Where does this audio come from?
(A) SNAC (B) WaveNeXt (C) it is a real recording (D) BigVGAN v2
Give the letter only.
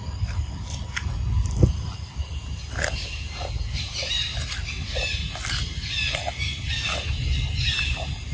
C